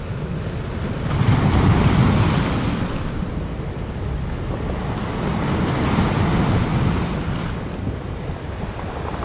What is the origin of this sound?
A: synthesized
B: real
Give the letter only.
B